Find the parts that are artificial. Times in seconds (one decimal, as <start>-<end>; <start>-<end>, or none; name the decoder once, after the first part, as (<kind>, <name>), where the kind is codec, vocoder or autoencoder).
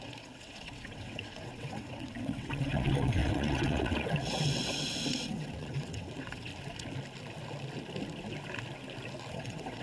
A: 0.0-6.5 (vocoder, WaveNeXt); 9.3-9.8